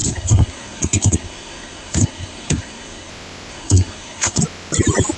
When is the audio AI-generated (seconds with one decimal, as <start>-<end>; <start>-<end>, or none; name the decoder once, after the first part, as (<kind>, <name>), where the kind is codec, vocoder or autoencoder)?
0.0-3.1 (codec, SNAC); 3.5-4.4